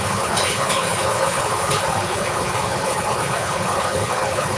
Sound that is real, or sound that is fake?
fake